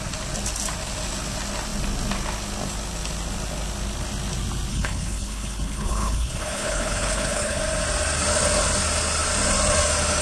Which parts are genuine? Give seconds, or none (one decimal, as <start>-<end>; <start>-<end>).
0.0-4.7; 7.6-10.2